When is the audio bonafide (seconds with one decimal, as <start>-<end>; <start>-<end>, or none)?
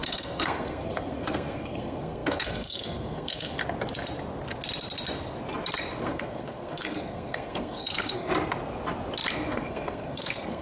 3.6-6.0; 8.3-9.5